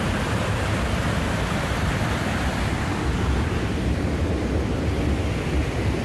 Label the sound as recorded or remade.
recorded